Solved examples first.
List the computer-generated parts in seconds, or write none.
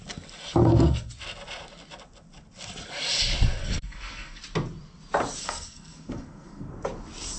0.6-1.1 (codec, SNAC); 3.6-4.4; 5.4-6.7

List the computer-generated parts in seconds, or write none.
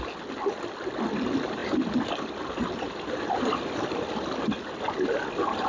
1.6-4.8 (vocoder, BigVGAN v2)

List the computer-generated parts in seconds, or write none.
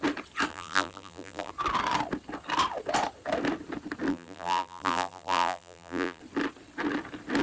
0.5-1.5 (vocoder, BigVGAN v2); 4.1-6.2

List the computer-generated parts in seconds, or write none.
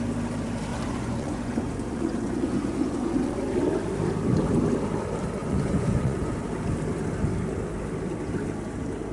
0.7-3.4 (vocoder, Vocos); 5.4-6.3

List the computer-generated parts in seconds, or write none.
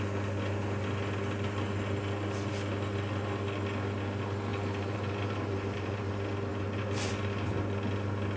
4.5-6.1 (vocoder, BigVGAN v2); 6.5-7.1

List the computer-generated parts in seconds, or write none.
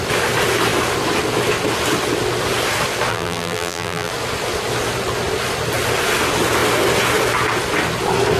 3.1-4.1 (vocoder, BigVGAN v2)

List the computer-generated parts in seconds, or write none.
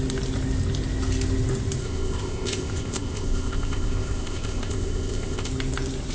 1.8-5.5 (codec, ZipCodec)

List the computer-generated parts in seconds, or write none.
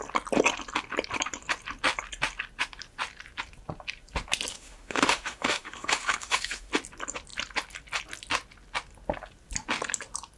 4.5-6.7 (autoencoder, DAC-VAE)